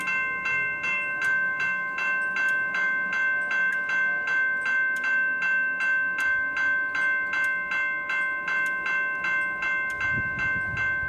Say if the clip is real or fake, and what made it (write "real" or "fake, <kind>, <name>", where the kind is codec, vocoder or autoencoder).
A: real